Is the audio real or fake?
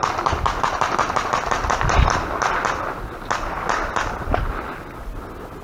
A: real